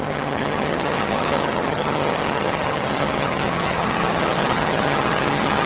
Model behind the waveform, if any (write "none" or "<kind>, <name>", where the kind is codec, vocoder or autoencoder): vocoder, HiFi-GAN